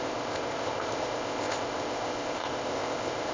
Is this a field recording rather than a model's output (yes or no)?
no